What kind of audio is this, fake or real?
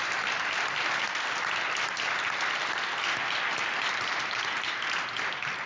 real